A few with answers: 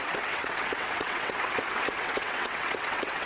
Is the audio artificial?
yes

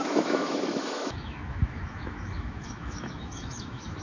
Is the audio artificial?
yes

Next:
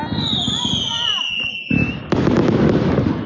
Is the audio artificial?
no